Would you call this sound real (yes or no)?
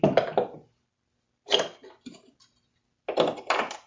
yes